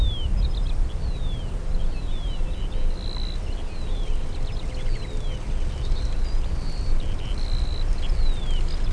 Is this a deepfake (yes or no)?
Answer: no